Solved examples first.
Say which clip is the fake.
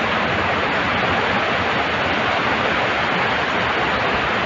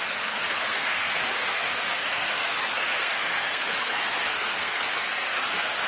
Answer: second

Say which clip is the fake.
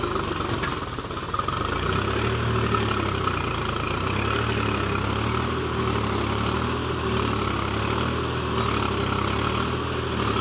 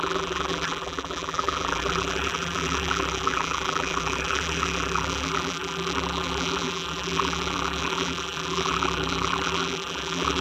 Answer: second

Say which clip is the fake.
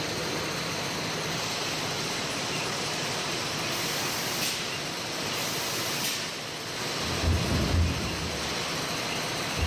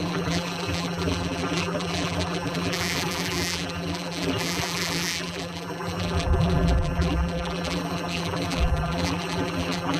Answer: second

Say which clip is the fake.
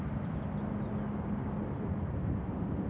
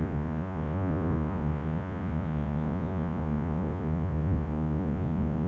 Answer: second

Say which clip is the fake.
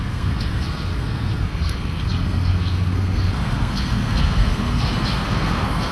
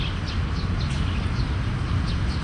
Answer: first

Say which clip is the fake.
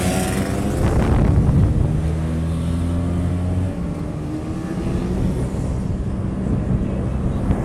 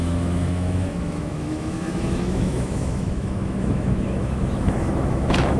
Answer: second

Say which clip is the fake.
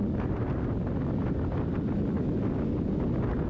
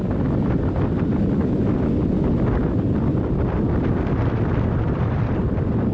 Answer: second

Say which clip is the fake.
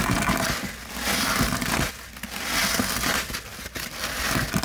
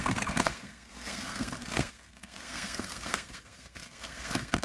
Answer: second